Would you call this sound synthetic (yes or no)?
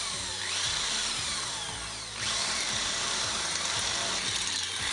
yes